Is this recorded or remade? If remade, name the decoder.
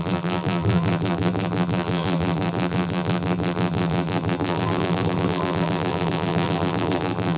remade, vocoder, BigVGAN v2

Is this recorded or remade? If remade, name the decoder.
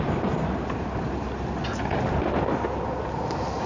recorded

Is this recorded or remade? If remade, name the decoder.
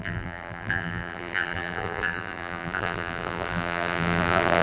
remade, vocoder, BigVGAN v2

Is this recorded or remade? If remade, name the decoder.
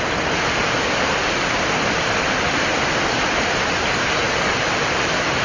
recorded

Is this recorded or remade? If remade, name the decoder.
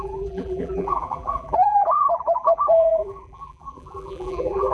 remade, vocoder, BigVGAN v2